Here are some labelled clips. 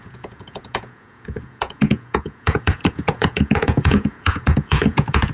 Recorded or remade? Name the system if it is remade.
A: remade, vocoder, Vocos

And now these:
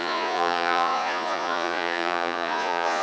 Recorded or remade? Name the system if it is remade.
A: remade, vocoder, Vocos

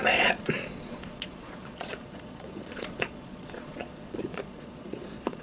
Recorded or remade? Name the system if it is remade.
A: remade, vocoder, Vocos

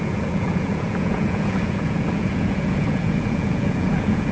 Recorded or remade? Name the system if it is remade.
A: remade, vocoder, Vocos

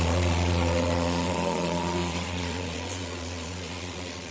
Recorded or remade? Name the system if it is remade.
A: remade, vocoder, Vocos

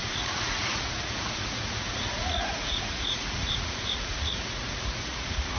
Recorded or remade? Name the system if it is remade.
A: remade, vocoder, Vocos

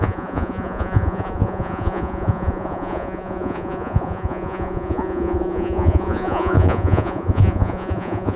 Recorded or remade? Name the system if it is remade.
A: remade, vocoder, Vocos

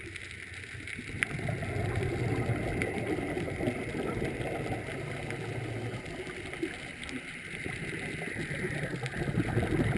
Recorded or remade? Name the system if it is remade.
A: recorded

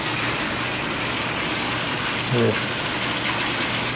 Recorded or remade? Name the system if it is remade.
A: recorded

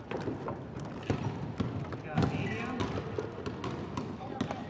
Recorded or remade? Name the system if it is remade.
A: recorded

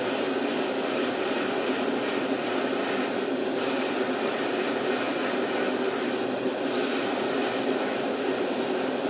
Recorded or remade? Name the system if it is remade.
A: recorded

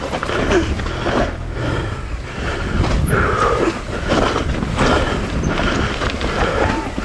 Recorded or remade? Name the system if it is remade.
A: recorded